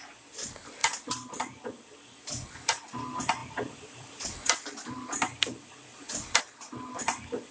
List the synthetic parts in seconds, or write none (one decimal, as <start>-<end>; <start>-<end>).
0.8-1.4; 3.4-6.4

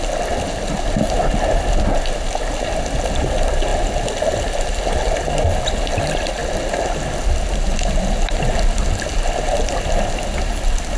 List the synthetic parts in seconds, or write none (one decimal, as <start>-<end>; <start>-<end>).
none

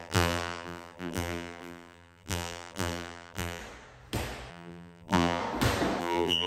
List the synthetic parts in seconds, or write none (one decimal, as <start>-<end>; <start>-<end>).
0.0-3.6; 4.5-5.4; 6.0-6.5